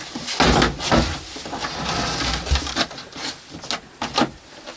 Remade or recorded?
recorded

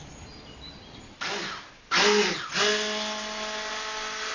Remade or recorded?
recorded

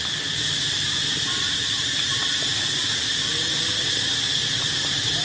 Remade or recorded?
recorded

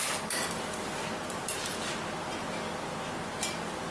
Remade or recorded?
recorded